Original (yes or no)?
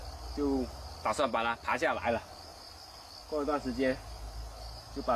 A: yes